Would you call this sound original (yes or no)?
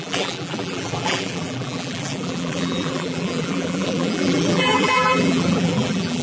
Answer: no